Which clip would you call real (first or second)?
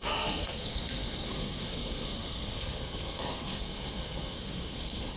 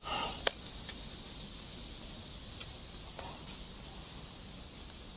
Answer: second